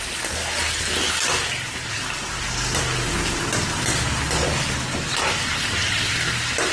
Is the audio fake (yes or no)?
no